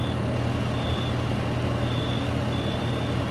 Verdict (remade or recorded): recorded